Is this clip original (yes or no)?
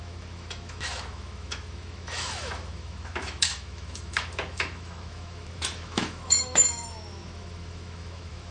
no